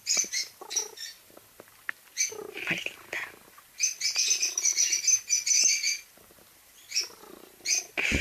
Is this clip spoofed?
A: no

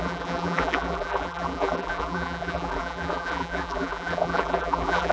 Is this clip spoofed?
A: yes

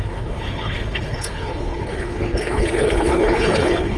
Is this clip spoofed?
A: yes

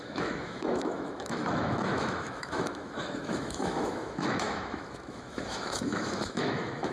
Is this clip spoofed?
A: yes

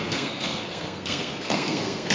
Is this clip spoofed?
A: yes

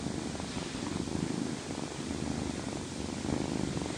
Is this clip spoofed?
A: no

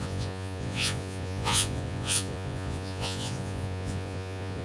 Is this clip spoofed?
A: yes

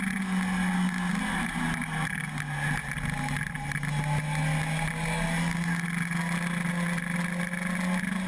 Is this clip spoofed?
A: no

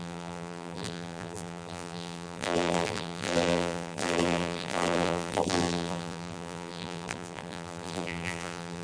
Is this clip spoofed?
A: yes